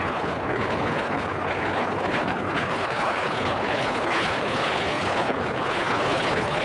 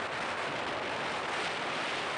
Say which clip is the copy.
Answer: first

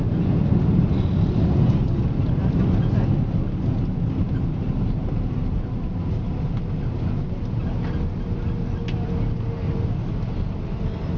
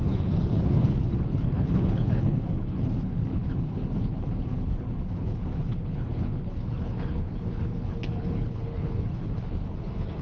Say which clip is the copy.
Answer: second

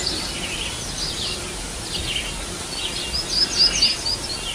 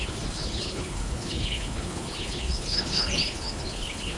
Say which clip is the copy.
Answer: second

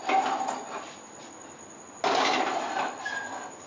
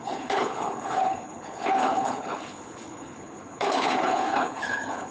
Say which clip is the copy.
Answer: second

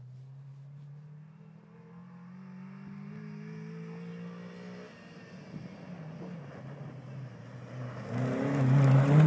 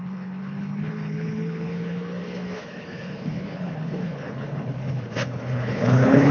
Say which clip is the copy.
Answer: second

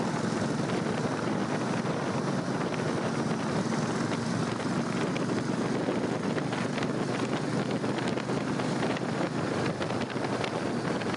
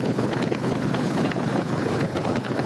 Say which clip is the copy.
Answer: second